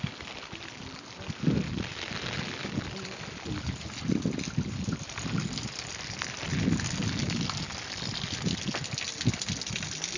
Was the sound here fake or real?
real